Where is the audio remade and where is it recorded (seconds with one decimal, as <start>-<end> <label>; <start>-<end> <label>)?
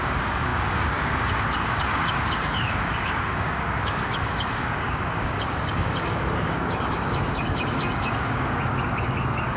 0.0-9.6 remade